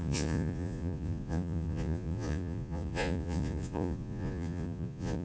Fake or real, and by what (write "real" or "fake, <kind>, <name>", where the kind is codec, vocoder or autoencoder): fake, vocoder, Vocos